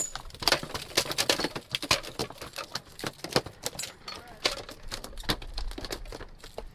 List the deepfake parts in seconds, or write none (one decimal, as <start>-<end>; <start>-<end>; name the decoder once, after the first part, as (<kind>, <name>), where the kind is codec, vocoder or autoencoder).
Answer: none